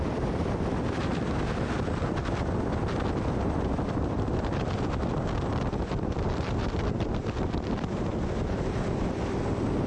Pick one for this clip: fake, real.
fake